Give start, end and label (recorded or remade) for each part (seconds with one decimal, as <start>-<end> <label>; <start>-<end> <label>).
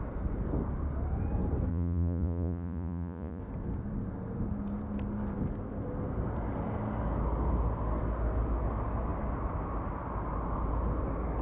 0.0-1.7 recorded; 1.7-3.4 remade; 3.4-11.4 recorded